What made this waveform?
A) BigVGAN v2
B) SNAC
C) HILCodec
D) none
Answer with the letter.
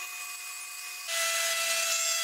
D